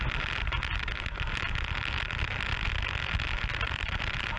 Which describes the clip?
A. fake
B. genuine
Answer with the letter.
B